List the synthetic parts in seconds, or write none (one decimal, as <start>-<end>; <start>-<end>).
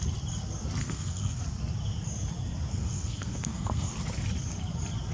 0.8-1.4; 2.7-3.9